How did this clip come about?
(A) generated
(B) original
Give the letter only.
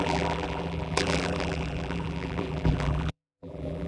A